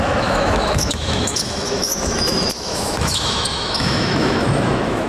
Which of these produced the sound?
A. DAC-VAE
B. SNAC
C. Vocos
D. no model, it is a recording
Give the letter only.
A